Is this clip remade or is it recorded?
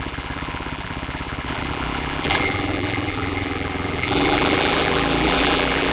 remade